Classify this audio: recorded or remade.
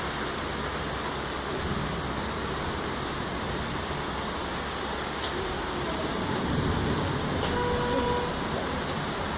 recorded